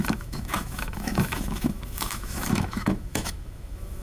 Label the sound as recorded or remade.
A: remade